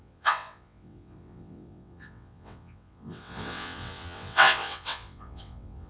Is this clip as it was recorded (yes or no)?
no